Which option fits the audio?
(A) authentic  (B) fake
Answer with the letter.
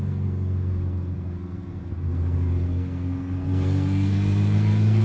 B